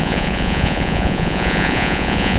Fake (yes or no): yes